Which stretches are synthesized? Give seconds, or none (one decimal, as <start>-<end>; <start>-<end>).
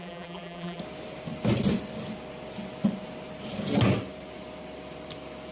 0.0-0.8